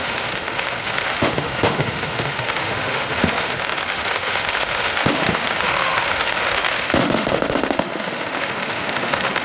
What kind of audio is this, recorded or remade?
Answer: remade